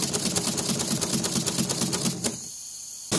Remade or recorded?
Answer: recorded